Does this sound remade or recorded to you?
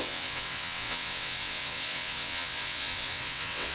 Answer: remade